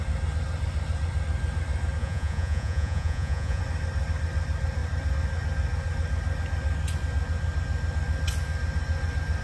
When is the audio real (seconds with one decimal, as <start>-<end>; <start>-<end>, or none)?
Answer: 0.0-2.0; 3.6-9.4